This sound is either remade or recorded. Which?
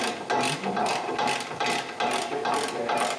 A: recorded